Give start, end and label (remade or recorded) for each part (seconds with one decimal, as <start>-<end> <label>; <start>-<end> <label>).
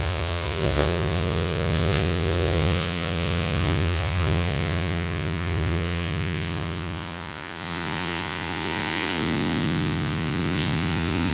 0.0-11.3 remade